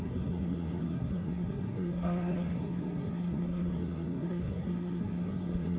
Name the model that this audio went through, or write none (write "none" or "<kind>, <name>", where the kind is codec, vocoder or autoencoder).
codec, SNAC